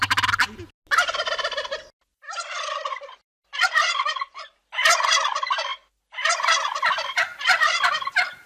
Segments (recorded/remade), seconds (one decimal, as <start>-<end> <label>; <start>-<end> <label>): 0.0-3.7 recorded; 3.7-4.6 remade; 4.6-8.5 recorded

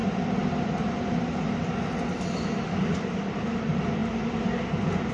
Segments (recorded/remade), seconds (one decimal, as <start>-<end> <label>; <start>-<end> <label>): 0.0-5.1 recorded

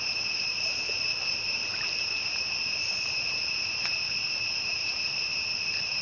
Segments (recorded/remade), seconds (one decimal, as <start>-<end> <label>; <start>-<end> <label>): 0.0-6.0 remade

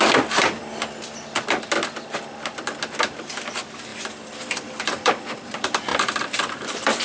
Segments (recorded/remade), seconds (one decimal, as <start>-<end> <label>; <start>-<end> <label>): 0.0-3.9 recorded; 3.9-5.1 remade; 5.1-5.9 recorded; 5.9-7.0 remade

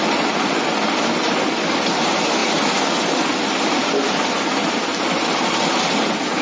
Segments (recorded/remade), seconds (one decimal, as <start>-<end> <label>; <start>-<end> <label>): 0.0-6.4 recorded

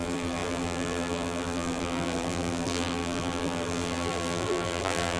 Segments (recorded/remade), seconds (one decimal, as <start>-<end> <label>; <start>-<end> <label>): 0.0-5.2 remade

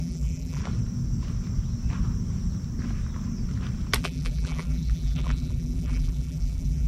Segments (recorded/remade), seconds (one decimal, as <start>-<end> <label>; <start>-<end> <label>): 0.0-0.6 remade; 0.6-4.0 recorded; 4.0-6.9 remade